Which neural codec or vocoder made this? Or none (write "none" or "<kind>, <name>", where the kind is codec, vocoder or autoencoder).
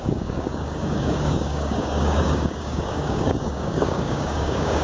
codec, DAC